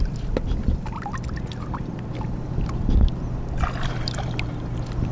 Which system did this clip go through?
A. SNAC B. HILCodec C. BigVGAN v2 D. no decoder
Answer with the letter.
D